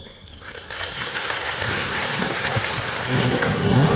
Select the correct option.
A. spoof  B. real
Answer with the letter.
A